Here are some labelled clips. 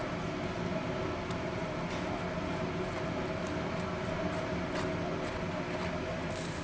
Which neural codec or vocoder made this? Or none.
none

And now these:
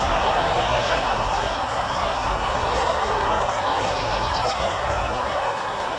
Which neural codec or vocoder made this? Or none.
codec, SNAC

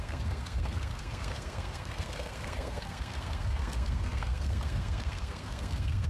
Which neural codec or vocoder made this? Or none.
codec, SNAC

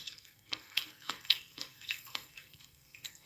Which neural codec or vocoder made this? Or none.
codec, SNAC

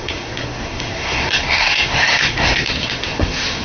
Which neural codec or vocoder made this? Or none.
codec, SNAC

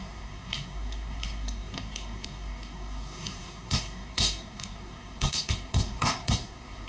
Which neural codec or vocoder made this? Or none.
codec, SNAC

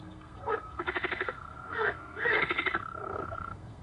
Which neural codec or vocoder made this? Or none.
codec, SNAC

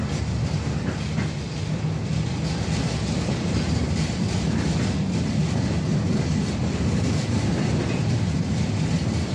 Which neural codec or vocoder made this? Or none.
none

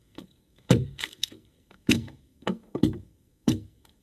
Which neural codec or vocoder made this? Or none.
codec, SNAC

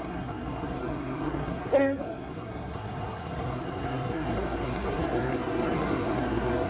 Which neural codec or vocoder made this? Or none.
codec, SNAC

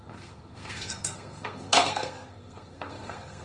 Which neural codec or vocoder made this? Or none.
codec, SNAC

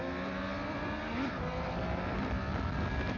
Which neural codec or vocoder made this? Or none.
none